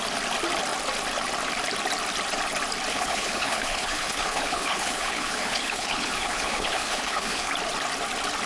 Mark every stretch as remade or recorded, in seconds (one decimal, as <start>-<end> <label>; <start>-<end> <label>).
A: 0.0-2.9 recorded; 2.9-7.5 remade; 7.5-8.5 recorded